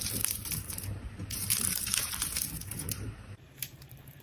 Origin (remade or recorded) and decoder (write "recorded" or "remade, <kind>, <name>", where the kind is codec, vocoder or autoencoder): remade, vocoder, BigVGAN v2